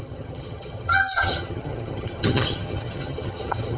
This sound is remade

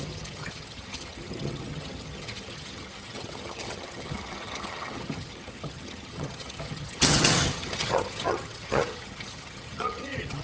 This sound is remade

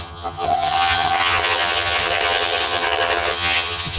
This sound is remade